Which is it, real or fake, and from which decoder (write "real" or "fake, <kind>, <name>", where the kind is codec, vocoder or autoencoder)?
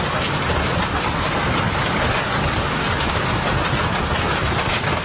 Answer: real